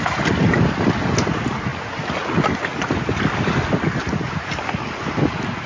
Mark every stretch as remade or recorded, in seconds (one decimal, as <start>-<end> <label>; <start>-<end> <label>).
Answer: 0.0-5.7 recorded